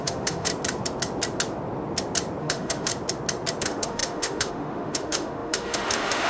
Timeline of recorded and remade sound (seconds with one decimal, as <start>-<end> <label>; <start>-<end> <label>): 0.0-0.5 remade; 0.5-2.4 recorded; 2.4-2.9 remade; 2.9-3.6 recorded; 3.6-6.3 remade